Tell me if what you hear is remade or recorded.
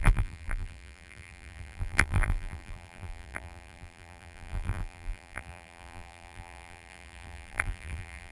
remade